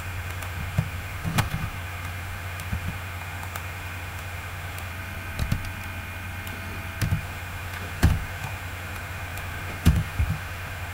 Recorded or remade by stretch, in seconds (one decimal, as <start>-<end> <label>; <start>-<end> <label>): 0.0-4.9 remade; 4.9-7.2 recorded; 7.2-10.9 remade